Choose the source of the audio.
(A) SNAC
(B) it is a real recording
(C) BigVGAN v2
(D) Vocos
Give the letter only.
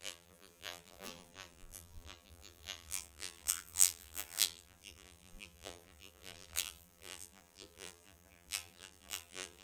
C